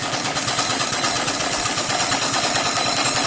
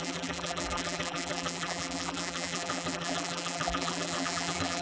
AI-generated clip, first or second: second